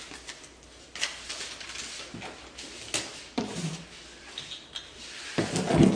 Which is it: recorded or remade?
recorded